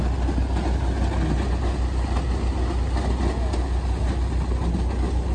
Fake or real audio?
real